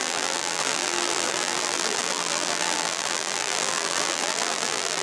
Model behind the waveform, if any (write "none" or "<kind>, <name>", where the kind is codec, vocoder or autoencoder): vocoder, BigVGAN v2